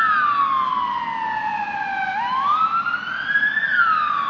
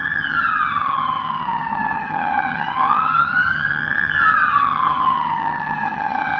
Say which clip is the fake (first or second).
second